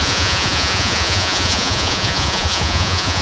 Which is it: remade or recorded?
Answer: remade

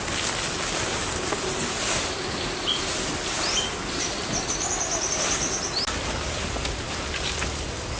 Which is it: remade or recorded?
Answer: recorded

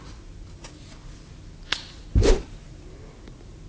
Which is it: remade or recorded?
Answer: recorded